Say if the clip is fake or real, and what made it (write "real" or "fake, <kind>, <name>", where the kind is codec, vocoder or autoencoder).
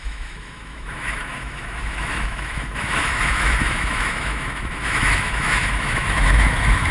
fake, autoencoder, DAC-VAE